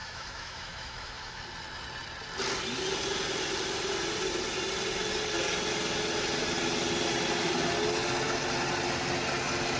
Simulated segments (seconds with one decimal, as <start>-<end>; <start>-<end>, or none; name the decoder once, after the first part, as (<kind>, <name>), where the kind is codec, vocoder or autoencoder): 0.0-1.4 (autoencoder, DAC-VAE)